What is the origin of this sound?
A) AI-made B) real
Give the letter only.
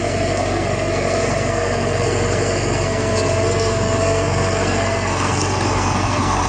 A